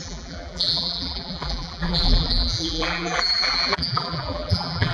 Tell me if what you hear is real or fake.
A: fake